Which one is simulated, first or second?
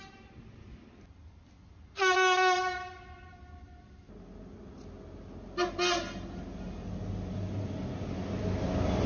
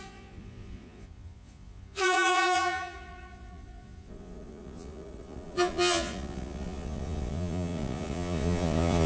second